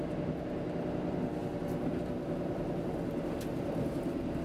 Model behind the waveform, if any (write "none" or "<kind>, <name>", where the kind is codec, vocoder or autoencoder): none